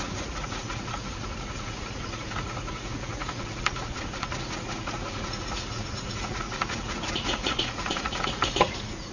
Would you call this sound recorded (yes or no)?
no